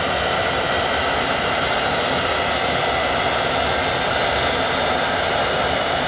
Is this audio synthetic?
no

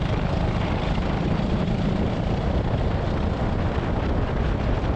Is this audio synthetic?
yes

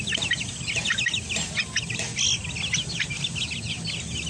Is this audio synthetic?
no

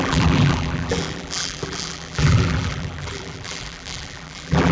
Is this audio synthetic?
yes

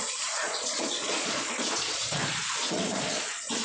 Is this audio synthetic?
yes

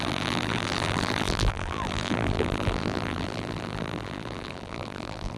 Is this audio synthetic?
yes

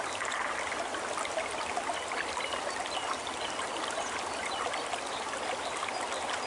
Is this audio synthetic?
no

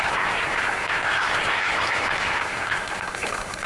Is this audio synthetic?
yes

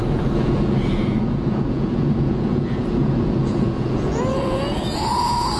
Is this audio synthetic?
yes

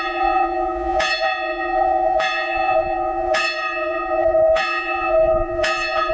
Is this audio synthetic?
yes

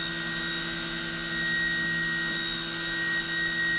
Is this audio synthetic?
no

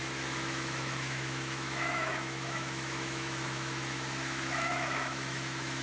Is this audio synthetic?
yes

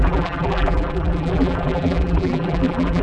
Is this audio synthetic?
yes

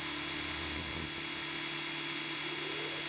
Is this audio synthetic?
no